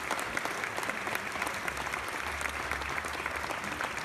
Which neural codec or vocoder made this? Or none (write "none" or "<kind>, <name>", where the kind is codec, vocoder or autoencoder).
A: none